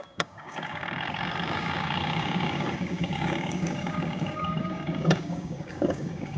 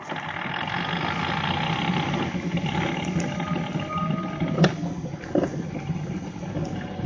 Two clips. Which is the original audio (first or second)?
second